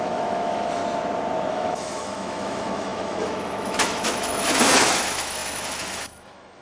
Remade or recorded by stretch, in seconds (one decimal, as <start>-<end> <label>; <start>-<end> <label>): 0.0-0.8 remade; 0.8-1.5 recorded; 1.5-6.6 remade